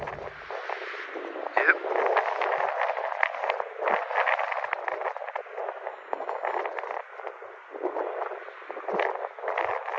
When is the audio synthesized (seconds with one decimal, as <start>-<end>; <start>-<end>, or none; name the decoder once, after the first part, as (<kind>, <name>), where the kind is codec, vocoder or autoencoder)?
5.9-6.6 (codec, DAC)